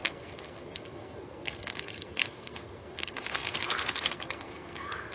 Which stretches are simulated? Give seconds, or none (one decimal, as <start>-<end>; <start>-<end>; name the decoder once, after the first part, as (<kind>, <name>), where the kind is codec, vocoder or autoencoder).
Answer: 0.0-5.1 (codec, SNAC)